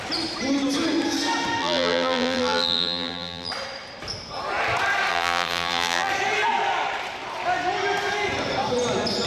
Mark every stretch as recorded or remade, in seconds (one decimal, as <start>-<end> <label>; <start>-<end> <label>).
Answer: 0.0-1.6 recorded; 1.6-3.5 remade; 3.5-5.1 recorded; 5.1-6.1 remade; 6.1-9.3 recorded